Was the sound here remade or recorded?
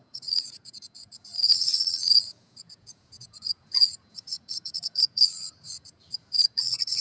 remade